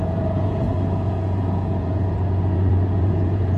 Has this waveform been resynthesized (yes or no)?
yes